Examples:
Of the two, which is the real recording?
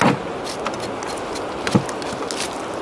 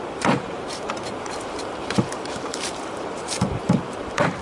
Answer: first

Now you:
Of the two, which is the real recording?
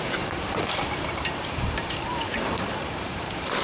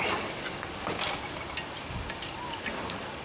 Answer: second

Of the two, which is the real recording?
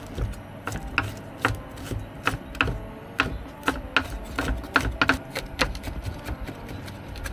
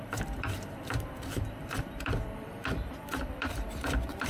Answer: first